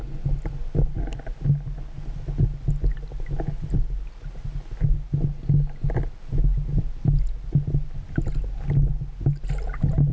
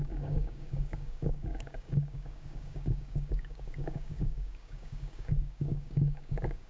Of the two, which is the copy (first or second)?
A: second